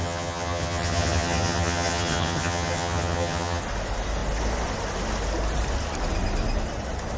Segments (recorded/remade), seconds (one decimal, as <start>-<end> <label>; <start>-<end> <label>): 0.0-3.6 remade; 3.6-7.2 recorded